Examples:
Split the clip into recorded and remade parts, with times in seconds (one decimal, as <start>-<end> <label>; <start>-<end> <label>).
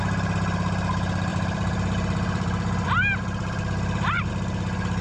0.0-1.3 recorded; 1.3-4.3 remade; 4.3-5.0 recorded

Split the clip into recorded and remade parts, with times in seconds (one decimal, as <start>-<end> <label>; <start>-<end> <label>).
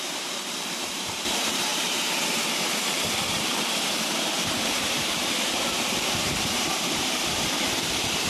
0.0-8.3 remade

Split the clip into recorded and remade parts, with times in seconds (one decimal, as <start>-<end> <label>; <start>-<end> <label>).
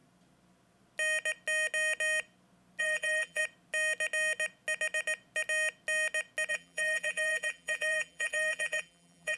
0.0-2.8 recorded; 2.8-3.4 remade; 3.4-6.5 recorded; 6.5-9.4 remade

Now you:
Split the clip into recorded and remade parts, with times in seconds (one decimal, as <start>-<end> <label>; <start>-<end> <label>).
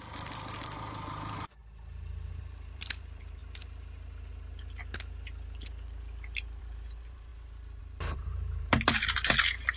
0.0-1.6 remade; 1.6-2.3 recorded; 2.3-3.4 remade; 3.4-6.6 recorded; 6.6-7.3 remade; 7.3-7.8 recorded; 7.8-9.8 remade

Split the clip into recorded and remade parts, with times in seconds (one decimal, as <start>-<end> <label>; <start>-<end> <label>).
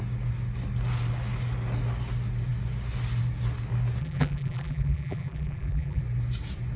0.0-4.0 recorded; 4.0-6.0 remade; 6.0-6.8 recorded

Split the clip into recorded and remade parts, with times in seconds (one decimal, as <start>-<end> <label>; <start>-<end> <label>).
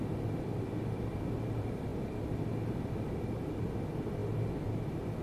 0.0-5.2 recorded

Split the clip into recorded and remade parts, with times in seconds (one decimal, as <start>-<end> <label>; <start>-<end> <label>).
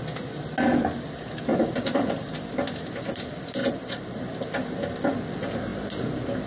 0.0-1.5 recorded; 1.5-2.3 remade; 2.3-3.6 recorded; 3.6-4.2 remade; 4.2-6.5 recorded